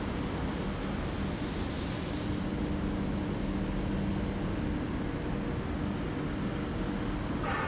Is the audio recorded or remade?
recorded